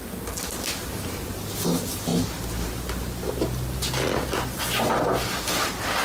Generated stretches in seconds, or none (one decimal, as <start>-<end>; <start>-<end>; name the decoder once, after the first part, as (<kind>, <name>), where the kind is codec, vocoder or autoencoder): none